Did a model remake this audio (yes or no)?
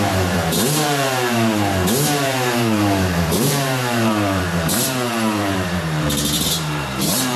yes